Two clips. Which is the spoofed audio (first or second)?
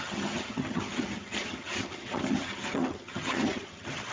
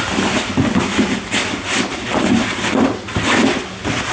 first